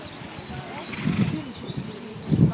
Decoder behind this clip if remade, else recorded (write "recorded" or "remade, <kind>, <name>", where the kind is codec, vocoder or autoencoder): recorded